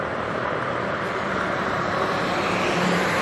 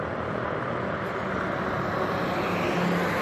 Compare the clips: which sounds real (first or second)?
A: second